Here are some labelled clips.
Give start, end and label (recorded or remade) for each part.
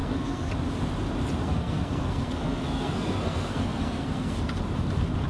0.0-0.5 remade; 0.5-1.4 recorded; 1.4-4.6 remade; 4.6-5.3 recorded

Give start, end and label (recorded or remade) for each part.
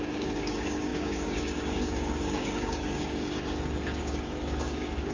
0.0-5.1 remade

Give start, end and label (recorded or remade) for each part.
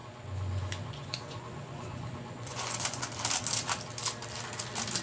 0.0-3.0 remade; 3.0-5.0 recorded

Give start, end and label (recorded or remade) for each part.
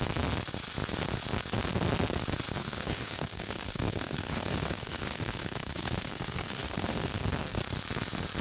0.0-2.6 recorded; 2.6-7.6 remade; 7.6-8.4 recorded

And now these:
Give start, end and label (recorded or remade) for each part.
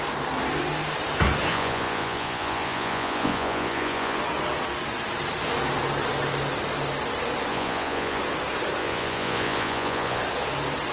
0.0-1.5 recorded; 1.5-4.2 remade; 4.2-7.5 recorded; 7.5-8.2 remade; 8.2-8.8 recorded; 8.8-10.2 remade; 10.2-10.9 recorded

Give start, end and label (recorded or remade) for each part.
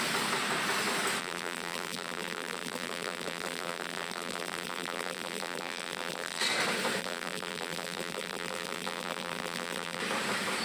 0.0-1.2 recorded; 1.2-6.4 remade; 6.4-7.0 recorded; 7.0-10.0 remade; 10.0-10.6 recorded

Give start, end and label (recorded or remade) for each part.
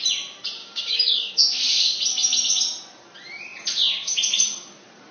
0.0-0.6 recorded; 0.6-1.3 remade; 1.3-5.1 recorded